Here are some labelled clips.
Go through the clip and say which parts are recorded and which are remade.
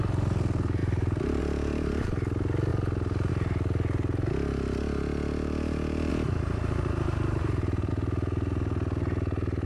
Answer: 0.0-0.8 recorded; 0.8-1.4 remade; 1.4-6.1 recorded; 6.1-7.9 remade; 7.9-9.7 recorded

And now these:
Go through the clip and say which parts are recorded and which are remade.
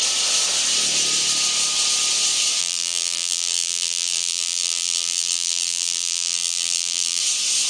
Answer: 0.0-2.6 recorded; 2.6-7.2 remade; 7.2-7.7 recorded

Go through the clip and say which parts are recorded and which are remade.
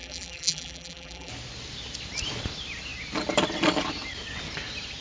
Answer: 0.0-1.3 remade; 1.3-5.0 recorded